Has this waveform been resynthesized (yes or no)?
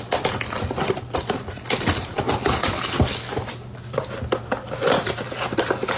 no